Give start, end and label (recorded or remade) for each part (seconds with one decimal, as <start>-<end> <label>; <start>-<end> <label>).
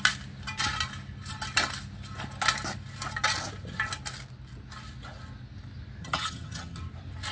0.0-6.0 recorded; 6.0-6.8 remade; 6.8-7.3 recorded